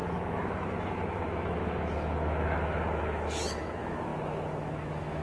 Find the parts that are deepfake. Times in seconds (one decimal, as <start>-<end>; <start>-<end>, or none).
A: 0.0-5.2